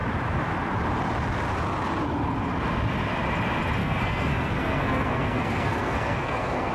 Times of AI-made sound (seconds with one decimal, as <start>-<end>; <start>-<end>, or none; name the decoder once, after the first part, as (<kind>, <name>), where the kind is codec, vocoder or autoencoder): 3.8-6.7 (codec, SNAC)